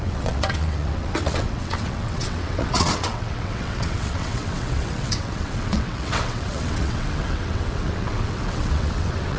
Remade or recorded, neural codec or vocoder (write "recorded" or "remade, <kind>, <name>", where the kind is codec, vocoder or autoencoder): remade, vocoder, WaveNeXt